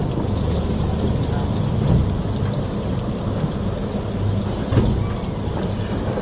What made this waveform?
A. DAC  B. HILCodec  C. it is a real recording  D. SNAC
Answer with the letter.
C